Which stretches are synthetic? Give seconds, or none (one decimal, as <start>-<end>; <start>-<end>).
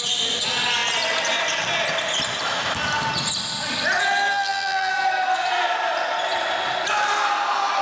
4.3-4.9